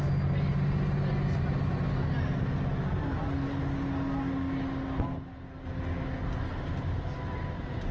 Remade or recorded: recorded